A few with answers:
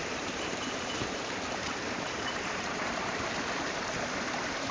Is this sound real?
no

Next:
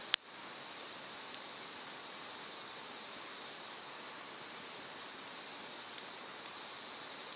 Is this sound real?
yes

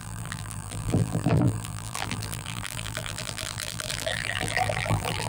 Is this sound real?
no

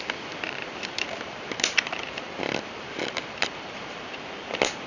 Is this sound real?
no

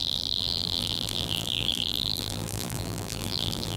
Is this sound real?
no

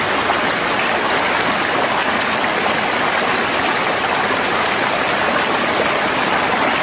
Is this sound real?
yes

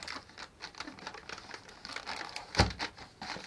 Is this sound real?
yes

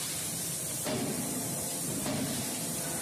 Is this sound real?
no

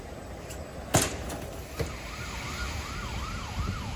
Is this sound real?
no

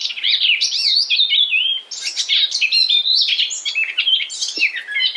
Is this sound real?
yes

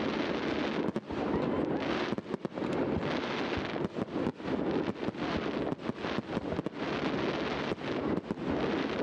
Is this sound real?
yes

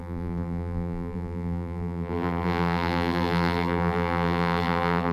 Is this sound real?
no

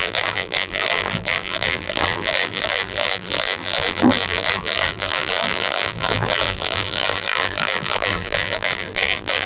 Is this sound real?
no